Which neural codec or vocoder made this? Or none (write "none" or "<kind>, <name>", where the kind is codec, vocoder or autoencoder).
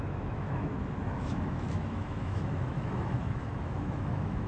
autoencoder, DAC-VAE